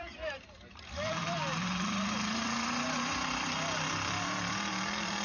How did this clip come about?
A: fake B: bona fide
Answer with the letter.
A